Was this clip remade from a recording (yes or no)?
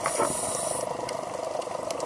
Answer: no